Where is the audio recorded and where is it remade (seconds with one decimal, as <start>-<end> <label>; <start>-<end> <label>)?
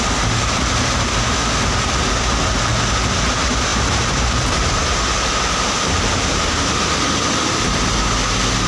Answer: 0.0-3.7 recorded; 3.7-6.5 remade; 6.5-8.7 recorded